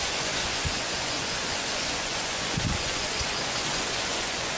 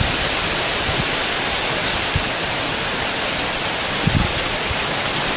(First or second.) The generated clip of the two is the first